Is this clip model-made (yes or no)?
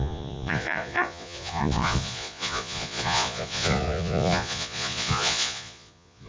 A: yes